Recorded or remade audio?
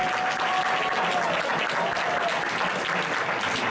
recorded